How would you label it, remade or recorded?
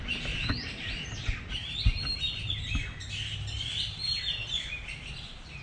recorded